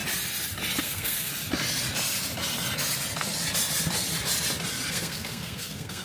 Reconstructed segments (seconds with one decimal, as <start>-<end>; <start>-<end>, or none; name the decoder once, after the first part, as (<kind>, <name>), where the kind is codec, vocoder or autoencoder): 0.8-1.3 (codec, SNAC); 4.9-6.0